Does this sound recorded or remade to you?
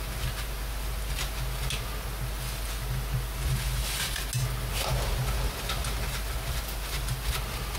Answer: recorded